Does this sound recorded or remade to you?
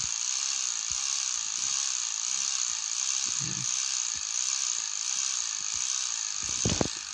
recorded